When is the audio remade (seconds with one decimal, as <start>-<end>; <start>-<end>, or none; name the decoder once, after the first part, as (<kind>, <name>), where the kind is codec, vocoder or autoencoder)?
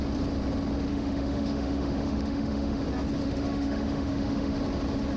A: 0.9-2.8 (autoencoder, DAC-VAE); 3.2-4.5